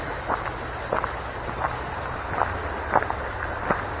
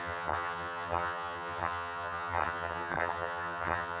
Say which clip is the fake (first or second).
second